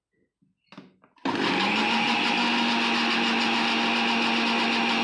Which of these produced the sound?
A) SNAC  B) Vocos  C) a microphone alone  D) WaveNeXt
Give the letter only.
C